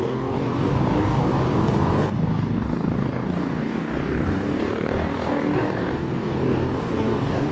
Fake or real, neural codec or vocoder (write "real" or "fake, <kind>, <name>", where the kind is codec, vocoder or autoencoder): fake, codec, DAC